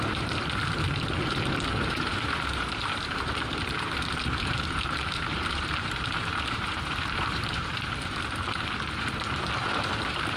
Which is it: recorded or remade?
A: remade